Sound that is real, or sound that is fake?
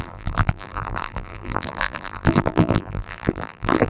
fake